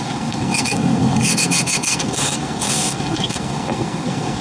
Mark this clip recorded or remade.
remade